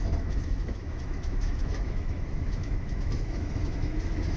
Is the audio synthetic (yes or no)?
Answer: yes